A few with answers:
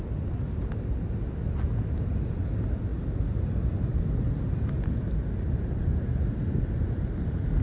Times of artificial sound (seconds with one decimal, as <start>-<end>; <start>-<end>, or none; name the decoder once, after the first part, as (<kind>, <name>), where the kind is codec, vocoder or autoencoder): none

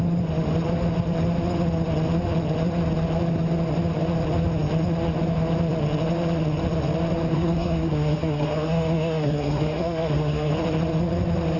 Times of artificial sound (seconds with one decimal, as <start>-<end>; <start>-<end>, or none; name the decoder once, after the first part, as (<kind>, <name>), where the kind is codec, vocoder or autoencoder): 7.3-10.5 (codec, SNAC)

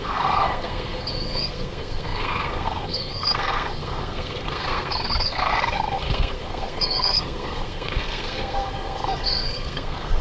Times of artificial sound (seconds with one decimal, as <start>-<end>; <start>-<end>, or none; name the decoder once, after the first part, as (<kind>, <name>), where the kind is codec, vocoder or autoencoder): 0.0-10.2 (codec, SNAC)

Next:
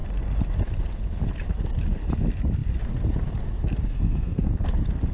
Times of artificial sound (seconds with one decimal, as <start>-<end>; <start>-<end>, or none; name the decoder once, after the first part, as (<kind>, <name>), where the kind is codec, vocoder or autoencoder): 3.9-4.5 (codec, SNAC)

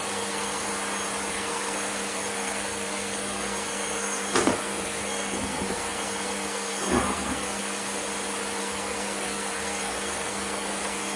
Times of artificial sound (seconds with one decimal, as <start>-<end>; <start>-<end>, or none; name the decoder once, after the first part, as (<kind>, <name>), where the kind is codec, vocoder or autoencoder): 0.0-0.7 (codec, SNAC); 1.3-8.1; 8.6-11.2